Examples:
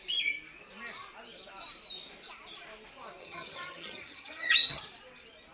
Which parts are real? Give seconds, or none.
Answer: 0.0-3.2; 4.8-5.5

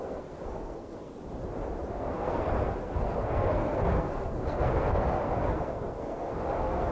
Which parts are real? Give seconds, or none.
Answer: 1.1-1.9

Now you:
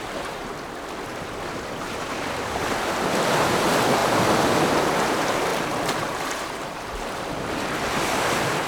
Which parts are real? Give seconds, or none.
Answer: 0.0-5.5; 7.5-8.7

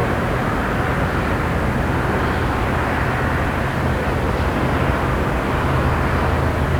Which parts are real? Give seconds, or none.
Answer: 1.2-6.8

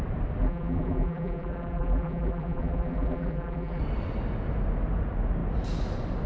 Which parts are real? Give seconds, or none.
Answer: 0.0-0.4; 3.8-6.3

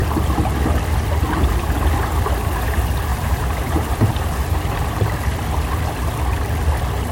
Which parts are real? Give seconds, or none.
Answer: 0.0-3.1; 4.7-7.1

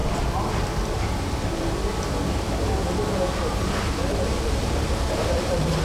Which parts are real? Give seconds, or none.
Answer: 0.0-4.0